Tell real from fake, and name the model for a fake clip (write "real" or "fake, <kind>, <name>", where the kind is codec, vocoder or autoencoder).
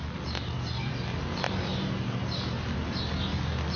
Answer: real